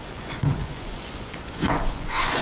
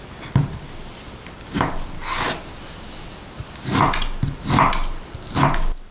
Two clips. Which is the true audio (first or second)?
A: second